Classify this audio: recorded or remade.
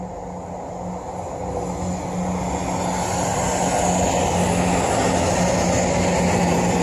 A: recorded